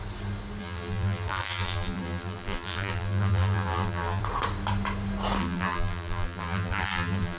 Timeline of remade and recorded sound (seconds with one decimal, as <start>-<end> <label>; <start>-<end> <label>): 0.0-0.6 recorded; 0.6-4.2 remade; 4.2-5.4 recorded; 5.4-7.4 remade